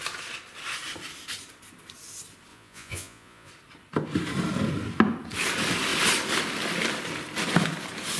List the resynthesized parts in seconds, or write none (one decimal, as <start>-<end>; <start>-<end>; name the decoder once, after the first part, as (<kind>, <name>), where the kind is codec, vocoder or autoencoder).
2.5-3.5 (vocoder, Vocos)